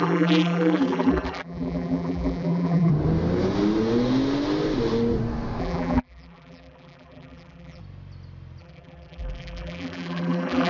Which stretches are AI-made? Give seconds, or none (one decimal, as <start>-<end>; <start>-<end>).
0.0-2.9; 5.6-7.8; 8.6-10.7